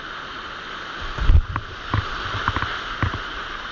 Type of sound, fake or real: real